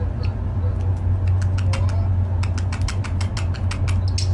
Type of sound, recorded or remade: recorded